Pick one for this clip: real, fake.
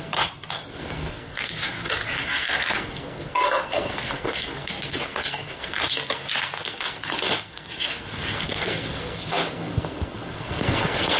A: fake